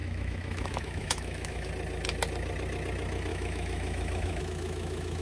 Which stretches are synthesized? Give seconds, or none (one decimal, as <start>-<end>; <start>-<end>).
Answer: 0.0-1.7; 3.3-5.2